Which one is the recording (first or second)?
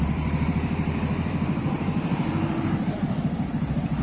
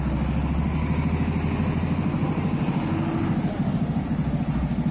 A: second